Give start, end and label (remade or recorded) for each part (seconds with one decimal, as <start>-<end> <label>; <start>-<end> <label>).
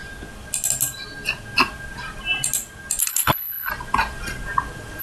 0.0-3.0 recorded; 3.0-3.7 remade; 3.7-5.0 recorded